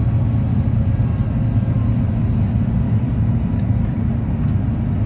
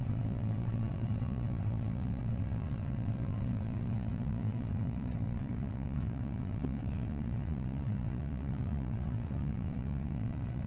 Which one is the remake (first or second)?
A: second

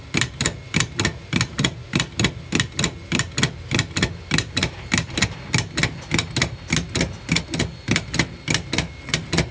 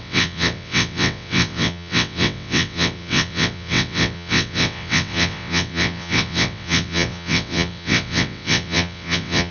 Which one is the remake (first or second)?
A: second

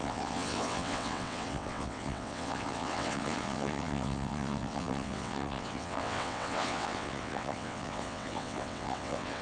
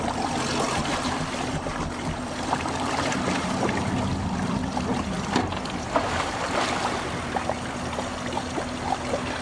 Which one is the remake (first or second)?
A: first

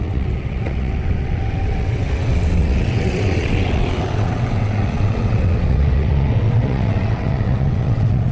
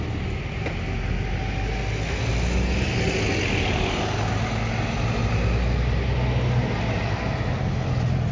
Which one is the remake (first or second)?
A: first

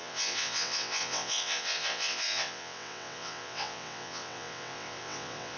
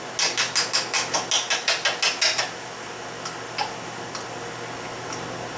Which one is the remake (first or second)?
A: first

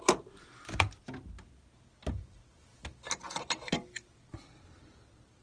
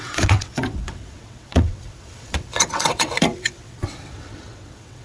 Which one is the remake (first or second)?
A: second